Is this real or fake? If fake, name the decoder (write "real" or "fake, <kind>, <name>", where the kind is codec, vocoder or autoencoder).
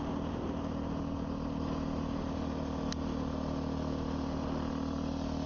real